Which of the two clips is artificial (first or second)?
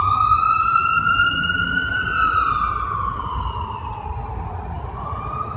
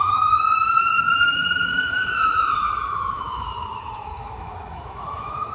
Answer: second